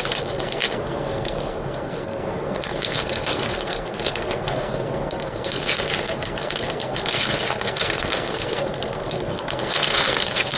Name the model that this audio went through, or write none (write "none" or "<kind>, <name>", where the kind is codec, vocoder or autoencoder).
codec, SNAC